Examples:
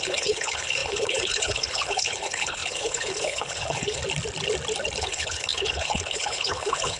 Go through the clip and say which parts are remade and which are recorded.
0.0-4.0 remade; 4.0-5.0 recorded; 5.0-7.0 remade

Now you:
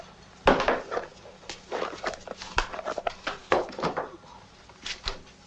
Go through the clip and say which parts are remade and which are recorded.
0.0-3.4 recorded; 3.4-3.9 remade; 3.9-5.5 recorded

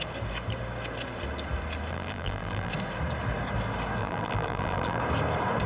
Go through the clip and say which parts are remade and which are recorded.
0.0-1.9 recorded; 1.9-2.7 remade; 2.7-4.0 recorded; 4.0-5.0 remade; 5.0-5.7 recorded

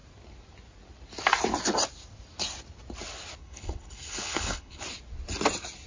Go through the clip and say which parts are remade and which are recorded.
0.0-3.4 recorded; 3.4-4.8 remade; 4.8-5.9 recorded

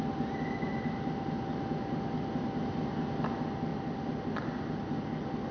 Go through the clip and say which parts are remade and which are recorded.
0.0-5.5 recorded

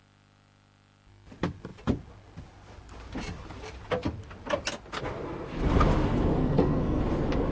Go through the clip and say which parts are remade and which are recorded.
0.0-6.4 recorded; 6.4-7.0 remade; 7.0-7.5 recorded